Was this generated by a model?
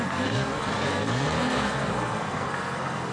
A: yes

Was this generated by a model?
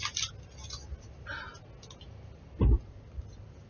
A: no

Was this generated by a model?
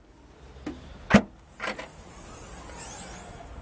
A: no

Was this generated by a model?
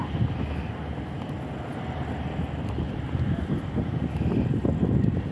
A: no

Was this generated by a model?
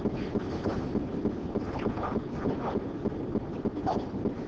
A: no